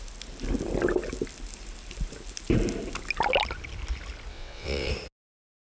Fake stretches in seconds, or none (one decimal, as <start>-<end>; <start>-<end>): 4.3-4.9